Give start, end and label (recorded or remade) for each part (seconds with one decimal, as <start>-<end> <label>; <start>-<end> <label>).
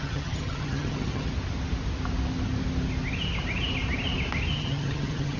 0.0-1.3 remade; 1.3-4.5 recorded; 4.5-5.4 remade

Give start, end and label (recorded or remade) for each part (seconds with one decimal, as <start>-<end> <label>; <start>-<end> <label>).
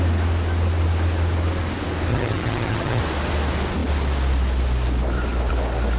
0.0-2.1 recorded; 2.1-3.0 remade; 3.0-6.0 recorded